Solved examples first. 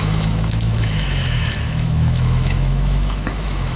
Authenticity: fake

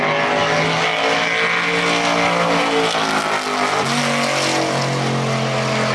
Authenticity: real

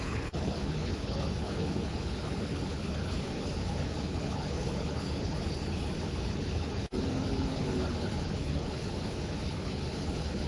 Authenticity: fake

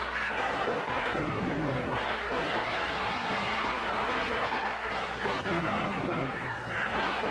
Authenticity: fake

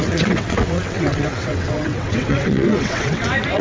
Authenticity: fake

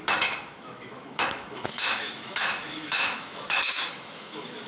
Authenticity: fake